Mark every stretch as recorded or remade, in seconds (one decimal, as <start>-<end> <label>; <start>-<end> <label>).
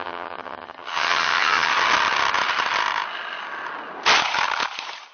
0.0-1.7 remade; 1.7-5.1 recorded